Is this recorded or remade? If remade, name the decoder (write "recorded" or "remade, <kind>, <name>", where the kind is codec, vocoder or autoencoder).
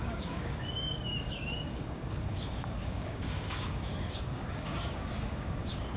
remade, codec, DAC